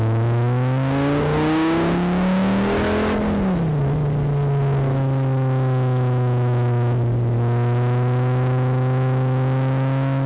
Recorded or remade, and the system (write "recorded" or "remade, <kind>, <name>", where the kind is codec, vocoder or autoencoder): recorded